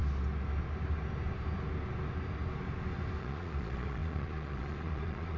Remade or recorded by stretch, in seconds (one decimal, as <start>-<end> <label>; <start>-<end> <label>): 0.0-3.2 recorded; 3.2-5.4 remade